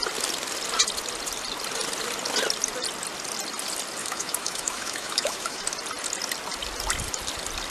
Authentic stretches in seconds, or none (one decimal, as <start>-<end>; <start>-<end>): 0.0-4.0; 5.6-7.7